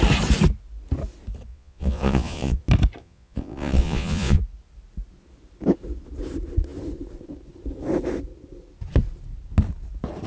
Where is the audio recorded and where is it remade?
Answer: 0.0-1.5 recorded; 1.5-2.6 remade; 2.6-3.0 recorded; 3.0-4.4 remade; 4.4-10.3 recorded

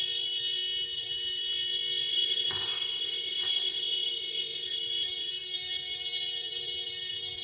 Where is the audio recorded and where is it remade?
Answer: 0.0-2.1 recorded; 2.1-4.8 remade; 4.8-7.4 recorded

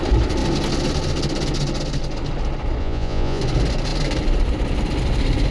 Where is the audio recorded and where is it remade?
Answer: 0.0-2.8 recorded; 2.8-3.4 remade; 3.4-5.5 recorded

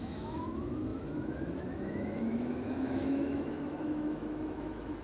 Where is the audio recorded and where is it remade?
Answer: 0.0-5.0 remade

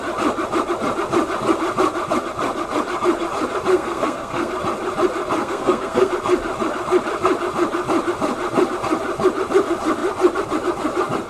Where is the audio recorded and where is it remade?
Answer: 0.0-3.7 recorded; 3.7-4.5 remade; 4.5-5.4 recorded; 5.4-6.1 remade; 6.1-11.3 recorded

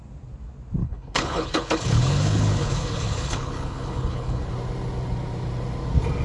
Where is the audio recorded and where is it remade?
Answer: 0.0-0.8 recorded; 0.8-4.5 remade; 4.5-6.2 recorded

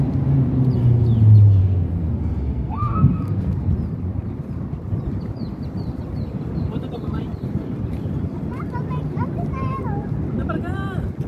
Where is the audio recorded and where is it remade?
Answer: 0.0-1.6 recorded; 1.6-3.7 remade; 3.7-11.3 recorded

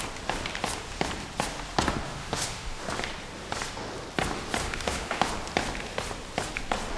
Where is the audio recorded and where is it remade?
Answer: 0.0-2.2 recorded; 2.2-2.8 remade; 2.8-4.6 recorded; 4.6-5.3 remade; 5.3-7.0 recorded